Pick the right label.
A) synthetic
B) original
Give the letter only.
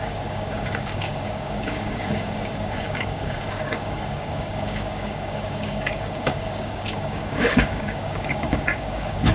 A